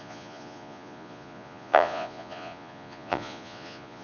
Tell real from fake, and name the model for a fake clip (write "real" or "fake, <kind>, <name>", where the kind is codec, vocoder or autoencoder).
fake, vocoder, Vocos